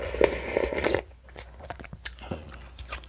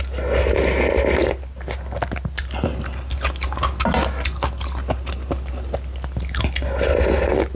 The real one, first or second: second